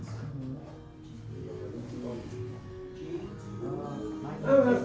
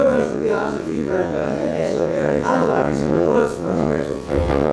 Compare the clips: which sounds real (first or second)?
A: first